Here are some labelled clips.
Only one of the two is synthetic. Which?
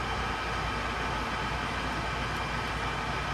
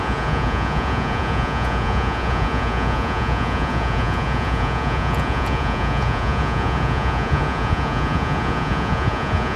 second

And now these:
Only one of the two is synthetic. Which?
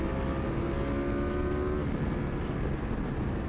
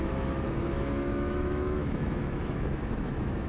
second